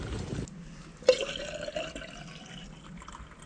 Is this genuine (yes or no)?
yes